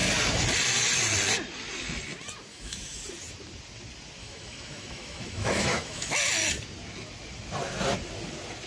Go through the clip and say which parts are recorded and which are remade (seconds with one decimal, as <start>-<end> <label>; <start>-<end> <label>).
0.0-2.5 recorded; 2.5-3.0 remade; 3.0-4.2 recorded; 4.2-6.1 remade; 6.1-8.7 recorded